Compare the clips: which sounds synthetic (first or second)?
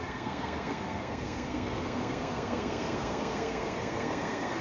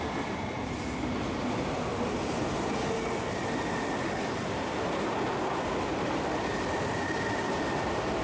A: first